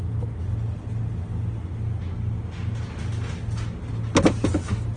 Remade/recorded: recorded